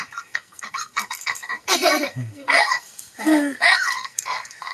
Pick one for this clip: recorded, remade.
remade